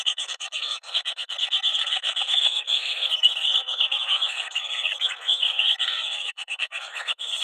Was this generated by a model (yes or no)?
yes